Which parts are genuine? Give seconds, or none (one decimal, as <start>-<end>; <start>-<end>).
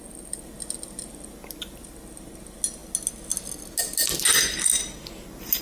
0.0-5.6